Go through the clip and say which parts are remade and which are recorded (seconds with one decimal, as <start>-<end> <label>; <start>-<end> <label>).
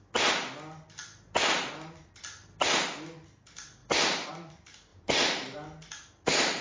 0.0-4.9 recorded; 4.9-6.6 remade